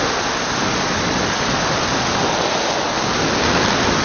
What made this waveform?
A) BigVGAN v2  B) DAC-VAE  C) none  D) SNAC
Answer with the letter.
C